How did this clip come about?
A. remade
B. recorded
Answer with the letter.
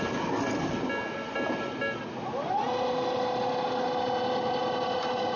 B